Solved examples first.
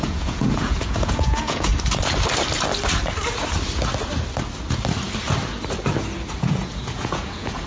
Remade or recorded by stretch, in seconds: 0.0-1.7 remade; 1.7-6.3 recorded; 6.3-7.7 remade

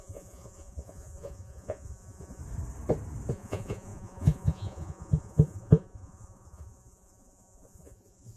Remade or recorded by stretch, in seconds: 0.0-2.4 remade; 2.4-3.3 recorded; 3.3-8.4 remade

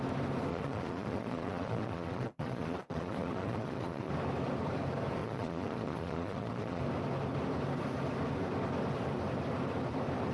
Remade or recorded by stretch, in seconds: 0.0-0.5 recorded; 0.5-4.1 remade; 4.1-5.2 recorded; 5.2-6.8 remade; 6.8-10.3 recorded

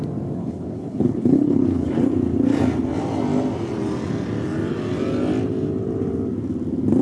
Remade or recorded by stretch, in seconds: 0.0-0.4 recorded; 0.4-2.0 remade; 2.0-7.0 recorded

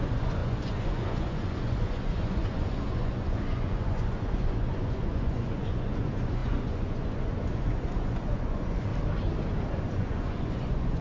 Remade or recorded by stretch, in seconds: 0.0-8.9 remade; 8.9-9.9 recorded; 9.9-11.0 remade

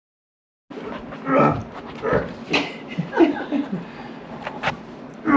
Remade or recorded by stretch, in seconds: 0.0-5.4 recorded